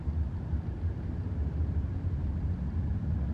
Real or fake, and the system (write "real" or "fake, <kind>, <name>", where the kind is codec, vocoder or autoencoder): fake, vocoder, BigVGAN v2